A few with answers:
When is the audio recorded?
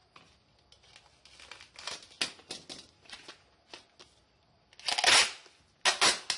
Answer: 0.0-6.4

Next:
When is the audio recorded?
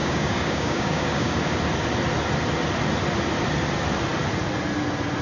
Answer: 1.3-5.2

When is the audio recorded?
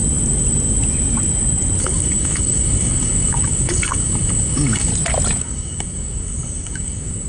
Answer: 0.0-1.8; 4.9-5.4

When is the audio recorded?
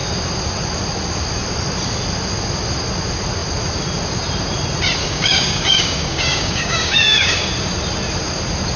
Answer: 0.0-5.0; 7.5-8.8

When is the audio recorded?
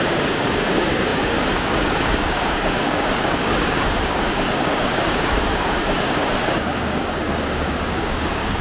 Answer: none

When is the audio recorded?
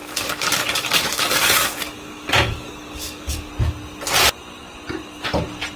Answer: 3.5-5.8